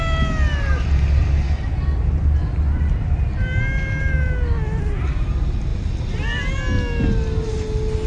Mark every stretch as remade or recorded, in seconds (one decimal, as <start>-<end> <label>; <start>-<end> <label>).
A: 0.0-5.7 recorded; 5.7-6.5 remade; 6.5-8.1 recorded